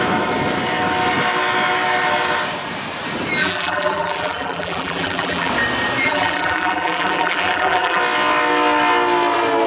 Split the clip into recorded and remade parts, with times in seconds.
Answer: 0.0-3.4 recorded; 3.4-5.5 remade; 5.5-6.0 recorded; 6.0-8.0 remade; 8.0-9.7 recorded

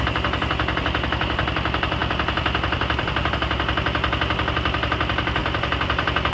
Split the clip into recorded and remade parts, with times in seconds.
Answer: 0.0-2.0 recorded; 2.0-3.3 remade; 3.3-5.4 recorded; 5.4-6.3 remade